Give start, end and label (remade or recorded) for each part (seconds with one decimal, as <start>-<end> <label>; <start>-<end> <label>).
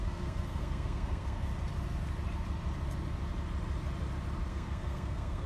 0.0-1.5 remade; 1.5-4.5 recorded; 4.5-5.5 remade